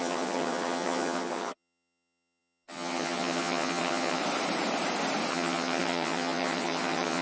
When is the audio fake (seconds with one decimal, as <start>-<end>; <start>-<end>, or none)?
0.0-4.2; 5.3-7.2

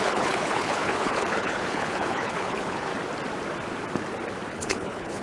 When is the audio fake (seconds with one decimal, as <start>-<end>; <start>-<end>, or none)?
0.0-2.9; 4.5-5.2

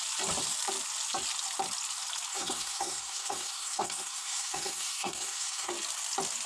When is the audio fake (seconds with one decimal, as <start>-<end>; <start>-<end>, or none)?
2.3-5.7

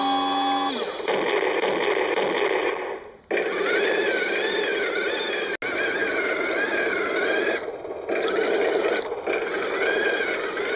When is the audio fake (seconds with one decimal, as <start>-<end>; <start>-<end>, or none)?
none

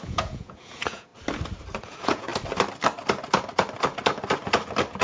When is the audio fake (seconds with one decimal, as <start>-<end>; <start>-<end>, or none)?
0.0-1.1; 1.8-2.3

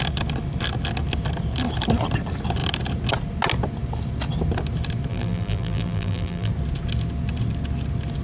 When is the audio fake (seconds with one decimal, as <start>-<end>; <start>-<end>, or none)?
5.1-6.5